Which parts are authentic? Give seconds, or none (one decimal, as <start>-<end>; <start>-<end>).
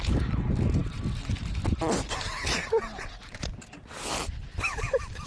0.0-5.3